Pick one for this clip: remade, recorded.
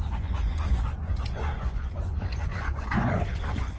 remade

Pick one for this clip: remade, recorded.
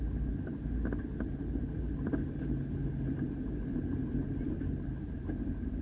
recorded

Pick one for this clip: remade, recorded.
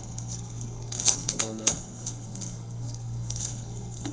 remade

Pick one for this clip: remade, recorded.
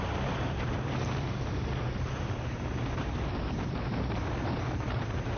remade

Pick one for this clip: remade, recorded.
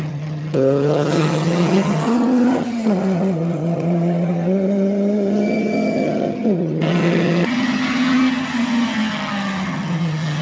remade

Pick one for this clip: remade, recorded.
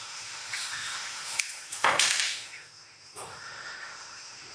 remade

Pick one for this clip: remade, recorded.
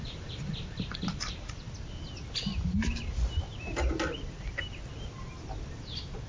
recorded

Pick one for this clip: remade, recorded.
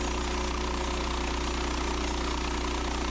recorded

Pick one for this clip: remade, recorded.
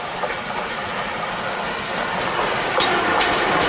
recorded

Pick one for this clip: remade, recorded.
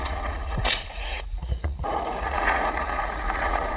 remade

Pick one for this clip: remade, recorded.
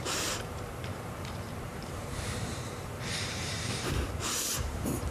remade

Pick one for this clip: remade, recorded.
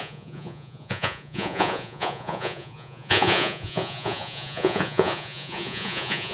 remade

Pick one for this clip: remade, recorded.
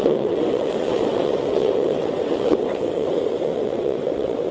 remade